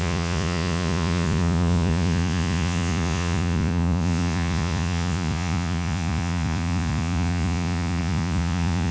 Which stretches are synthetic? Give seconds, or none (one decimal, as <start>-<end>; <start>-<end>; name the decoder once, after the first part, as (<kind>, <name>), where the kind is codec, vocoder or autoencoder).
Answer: 0.0-8.9 (vocoder, Vocos)